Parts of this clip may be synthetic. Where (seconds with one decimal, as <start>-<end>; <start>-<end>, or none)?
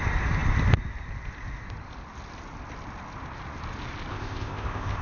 4.1-5.0